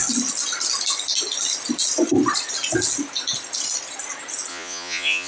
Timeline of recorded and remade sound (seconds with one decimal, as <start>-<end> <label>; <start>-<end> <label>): 0.0-4.5 recorded; 4.5-5.3 remade